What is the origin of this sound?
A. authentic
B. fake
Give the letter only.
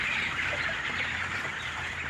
B